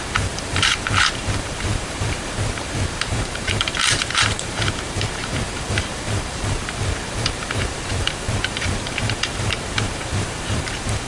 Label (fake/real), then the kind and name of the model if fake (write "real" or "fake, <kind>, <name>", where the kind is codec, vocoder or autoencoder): fake, vocoder, BigVGAN v2